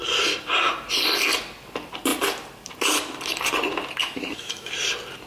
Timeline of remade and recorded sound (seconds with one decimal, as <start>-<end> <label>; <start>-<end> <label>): 0.0-4.0 recorded; 4.0-4.7 remade; 4.7-5.3 recorded